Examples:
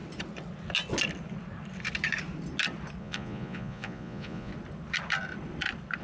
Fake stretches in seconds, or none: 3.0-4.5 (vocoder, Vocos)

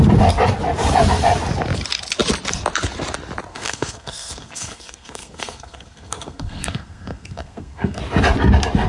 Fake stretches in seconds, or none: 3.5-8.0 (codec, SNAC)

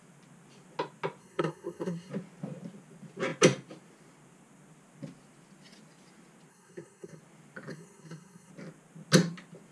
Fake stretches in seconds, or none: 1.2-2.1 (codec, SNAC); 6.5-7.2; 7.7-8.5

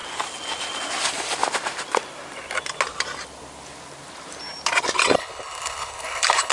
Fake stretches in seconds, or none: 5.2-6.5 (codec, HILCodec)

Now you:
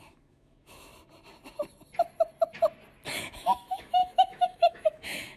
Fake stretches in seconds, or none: 0.0-0.9 (autoencoder, DAC-VAE); 3.2-5.4

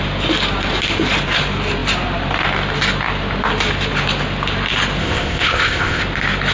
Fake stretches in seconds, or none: 5.0-6.0 (codec, ZipCodec)

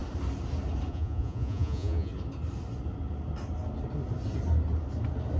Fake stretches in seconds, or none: 0.9-2.1 (vocoder, Vocos)